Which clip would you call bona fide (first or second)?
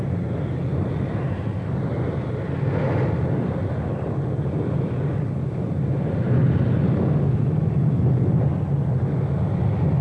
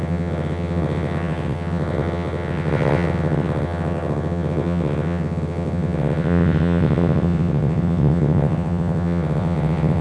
first